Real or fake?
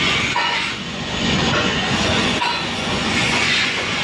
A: fake